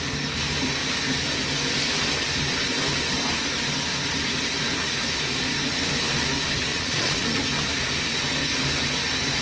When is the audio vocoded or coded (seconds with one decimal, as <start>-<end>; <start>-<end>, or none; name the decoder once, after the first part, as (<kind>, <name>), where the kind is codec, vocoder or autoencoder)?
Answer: 6.7-7.4 (vocoder, Vocos)